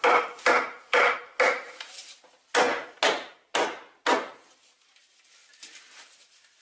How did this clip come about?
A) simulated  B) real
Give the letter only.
B